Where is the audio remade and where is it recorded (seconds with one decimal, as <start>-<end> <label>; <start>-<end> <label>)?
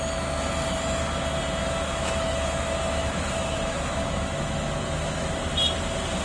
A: 0.0-1.6 recorded; 1.6-5.3 remade; 5.3-6.2 recorded